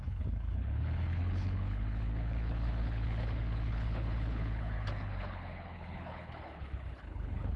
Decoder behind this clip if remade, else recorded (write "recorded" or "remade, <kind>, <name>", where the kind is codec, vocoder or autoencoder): remade, codec, HILCodec